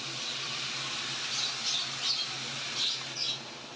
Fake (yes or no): no